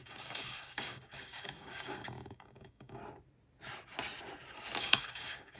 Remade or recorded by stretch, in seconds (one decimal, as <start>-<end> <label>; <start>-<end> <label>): 0.0-3.0 remade; 3.0-4.8 recorded; 4.8-5.6 remade